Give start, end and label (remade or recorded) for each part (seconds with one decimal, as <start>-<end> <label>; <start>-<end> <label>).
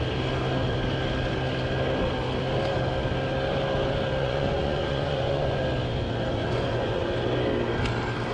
0.0-4.2 recorded; 4.2-5.6 remade; 5.6-6.4 recorded; 6.4-7.1 remade; 7.1-8.3 recorded